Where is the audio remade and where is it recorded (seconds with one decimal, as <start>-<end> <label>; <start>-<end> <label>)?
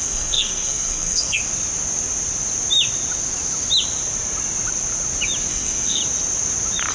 0.0-1.4 remade; 1.4-5.5 recorded; 5.5-6.0 remade; 6.0-6.9 recorded